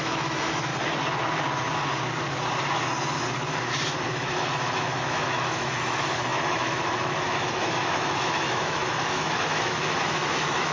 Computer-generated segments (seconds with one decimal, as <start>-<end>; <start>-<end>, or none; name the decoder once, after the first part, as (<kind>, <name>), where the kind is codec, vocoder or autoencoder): 0.0-0.7 (autoencoder, DAC-VAE); 4.1-10.7